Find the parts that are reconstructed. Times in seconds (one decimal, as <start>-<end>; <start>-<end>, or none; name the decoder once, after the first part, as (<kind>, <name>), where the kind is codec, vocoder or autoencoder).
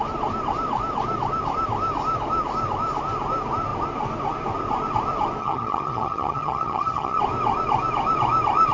5.4-7.2 (vocoder, HiFi-GAN)